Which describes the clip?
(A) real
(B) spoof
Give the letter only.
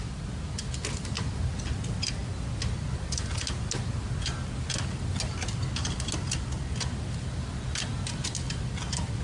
A